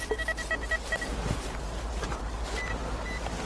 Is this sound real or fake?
real